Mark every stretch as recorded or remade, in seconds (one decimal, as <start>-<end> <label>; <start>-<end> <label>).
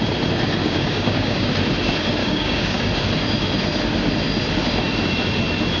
0.0-0.6 recorded; 0.6-1.5 remade; 1.5-2.2 recorded; 2.2-2.8 remade; 2.8-5.8 recorded